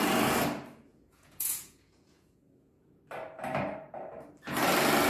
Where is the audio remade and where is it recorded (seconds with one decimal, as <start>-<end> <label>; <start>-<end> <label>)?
0.0-0.9 recorded; 0.9-3.0 remade; 3.0-5.1 recorded